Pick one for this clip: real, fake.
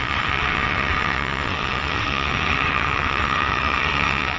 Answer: fake